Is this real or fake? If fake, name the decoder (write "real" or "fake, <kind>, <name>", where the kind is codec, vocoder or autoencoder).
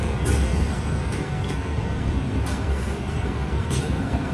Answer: fake, codec, SNAC